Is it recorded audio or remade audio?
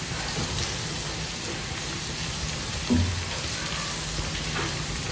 recorded